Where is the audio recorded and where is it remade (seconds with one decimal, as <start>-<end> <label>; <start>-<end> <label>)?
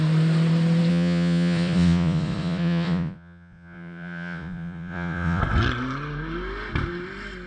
0.0-0.9 recorded; 0.9-5.4 remade; 5.4-7.5 recorded